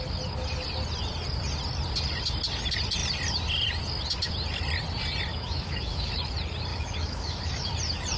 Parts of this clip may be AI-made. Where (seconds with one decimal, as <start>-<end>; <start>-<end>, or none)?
5.3-6.1; 6.7-7.7